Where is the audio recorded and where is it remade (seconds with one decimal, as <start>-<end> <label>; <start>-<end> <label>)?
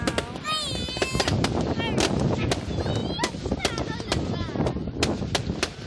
0.0-3.0 recorded; 3.0-5.2 remade; 5.2-5.9 recorded